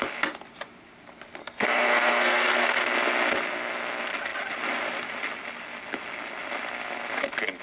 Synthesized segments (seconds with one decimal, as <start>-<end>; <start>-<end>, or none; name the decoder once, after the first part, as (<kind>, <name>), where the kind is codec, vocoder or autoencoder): 1.4-2.8 (codec, SNAC)